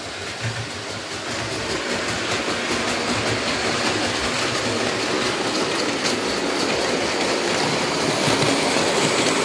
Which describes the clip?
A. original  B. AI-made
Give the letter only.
A